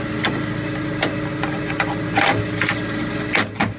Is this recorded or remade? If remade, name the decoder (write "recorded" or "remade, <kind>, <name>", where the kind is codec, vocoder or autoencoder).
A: recorded